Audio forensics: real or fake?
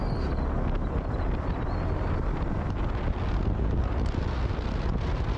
real